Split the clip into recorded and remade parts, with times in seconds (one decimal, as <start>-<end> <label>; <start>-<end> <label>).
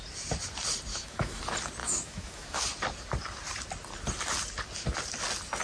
0.0-0.9 recorded; 0.9-1.4 remade; 1.4-1.8 recorded; 1.8-2.6 remade; 2.6-5.6 recorded